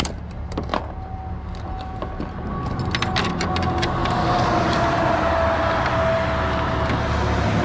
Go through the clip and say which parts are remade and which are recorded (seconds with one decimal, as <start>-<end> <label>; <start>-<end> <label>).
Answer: 0.0-7.6 recorded